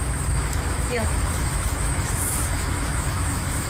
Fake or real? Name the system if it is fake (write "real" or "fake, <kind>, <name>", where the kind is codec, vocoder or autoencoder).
fake, autoencoder, DAC-VAE